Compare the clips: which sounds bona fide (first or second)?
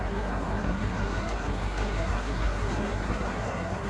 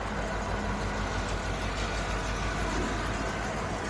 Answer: second